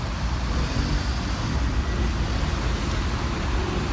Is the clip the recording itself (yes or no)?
yes